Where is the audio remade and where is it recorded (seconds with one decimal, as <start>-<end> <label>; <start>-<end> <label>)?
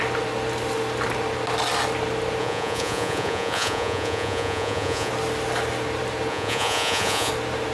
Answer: 0.0-2.4 recorded; 2.4-5.1 remade; 5.1-6.3 recorded; 6.3-7.3 remade; 7.3-7.7 recorded